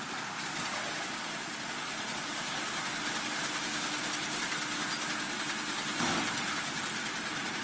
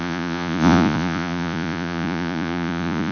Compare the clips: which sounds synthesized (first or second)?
second